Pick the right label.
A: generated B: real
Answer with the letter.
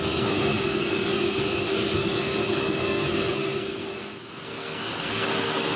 A